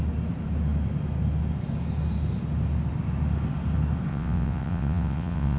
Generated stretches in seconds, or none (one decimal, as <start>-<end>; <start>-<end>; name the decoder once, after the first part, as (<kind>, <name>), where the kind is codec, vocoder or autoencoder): 4.1-5.6 (vocoder, WaveNeXt)